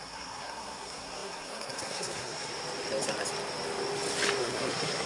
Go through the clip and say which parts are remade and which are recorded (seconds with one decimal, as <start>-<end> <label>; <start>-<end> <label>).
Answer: 0.0-2.5 remade; 2.5-4.4 recorded; 4.4-5.1 remade